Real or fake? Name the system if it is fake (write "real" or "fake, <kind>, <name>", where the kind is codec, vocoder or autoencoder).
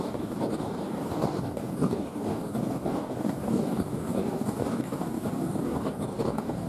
fake, codec, DAC